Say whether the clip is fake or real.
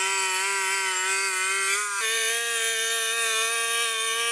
real